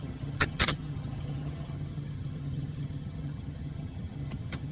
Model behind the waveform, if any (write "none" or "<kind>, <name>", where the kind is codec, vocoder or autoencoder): vocoder, HiFi-GAN